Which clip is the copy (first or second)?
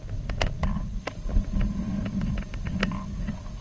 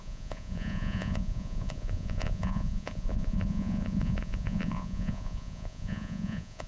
second